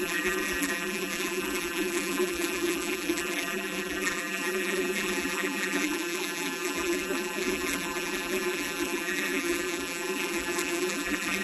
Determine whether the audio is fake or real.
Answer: fake